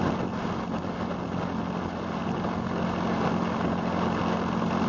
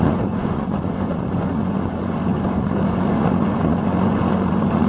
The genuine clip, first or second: first